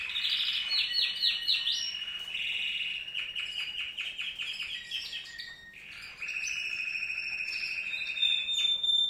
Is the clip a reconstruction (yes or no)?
no